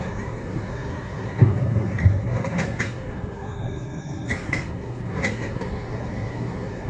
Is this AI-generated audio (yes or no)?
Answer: yes